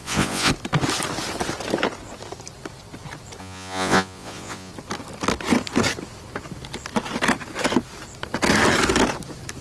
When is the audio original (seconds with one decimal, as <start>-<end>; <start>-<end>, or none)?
0.5-3.4; 4.7-9.6